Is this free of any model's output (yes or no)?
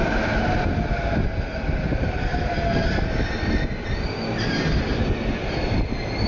yes